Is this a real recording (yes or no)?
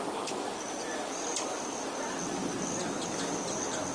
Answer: yes